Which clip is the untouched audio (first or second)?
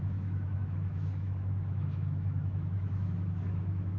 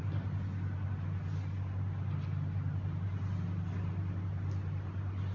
second